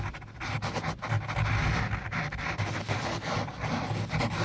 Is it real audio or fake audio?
real